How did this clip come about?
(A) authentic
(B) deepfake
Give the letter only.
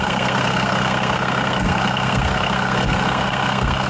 B